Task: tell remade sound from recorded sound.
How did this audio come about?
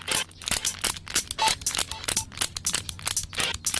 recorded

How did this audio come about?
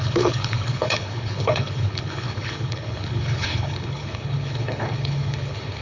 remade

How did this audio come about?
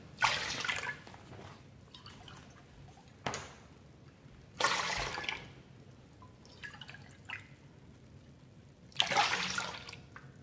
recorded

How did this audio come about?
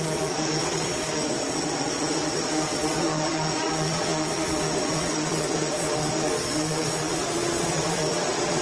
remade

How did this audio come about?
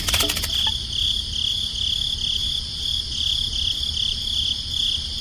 recorded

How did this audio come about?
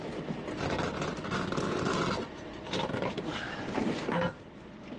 recorded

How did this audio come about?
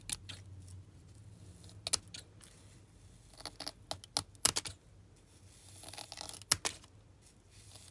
recorded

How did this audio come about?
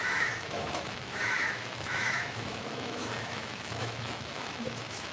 remade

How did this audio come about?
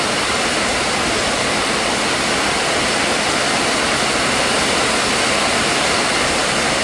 recorded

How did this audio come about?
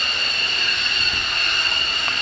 recorded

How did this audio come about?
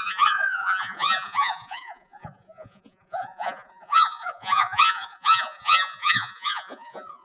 remade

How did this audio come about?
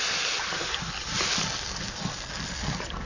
recorded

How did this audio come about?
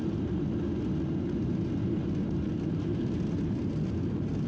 recorded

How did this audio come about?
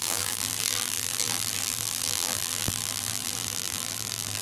remade